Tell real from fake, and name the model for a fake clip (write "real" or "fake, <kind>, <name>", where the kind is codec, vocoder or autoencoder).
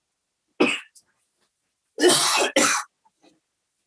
real